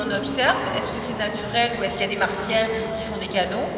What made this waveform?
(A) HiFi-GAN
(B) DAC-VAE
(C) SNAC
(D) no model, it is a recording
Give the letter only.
B